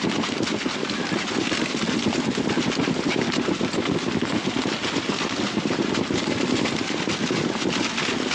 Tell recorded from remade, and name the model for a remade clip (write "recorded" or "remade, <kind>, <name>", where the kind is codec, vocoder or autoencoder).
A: recorded